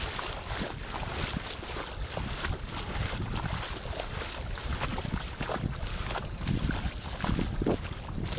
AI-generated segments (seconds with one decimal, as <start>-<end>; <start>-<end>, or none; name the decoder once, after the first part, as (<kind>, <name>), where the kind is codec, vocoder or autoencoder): none